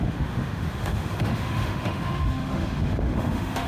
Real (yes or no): no